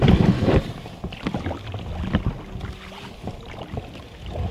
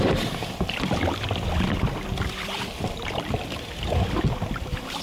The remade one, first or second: second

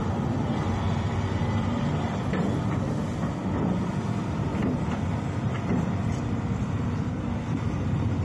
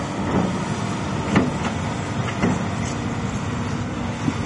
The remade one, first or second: first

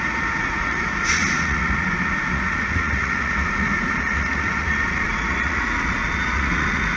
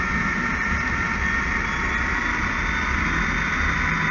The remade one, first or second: first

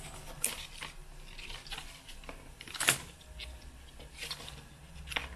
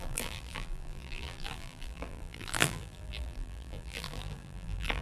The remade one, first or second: second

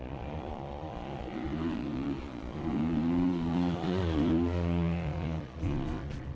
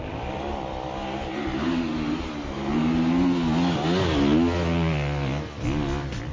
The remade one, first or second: first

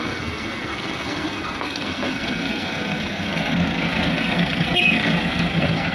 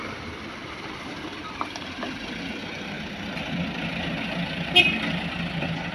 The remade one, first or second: first